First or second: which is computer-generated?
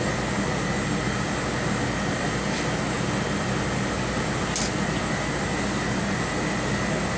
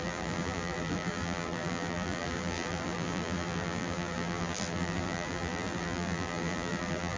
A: second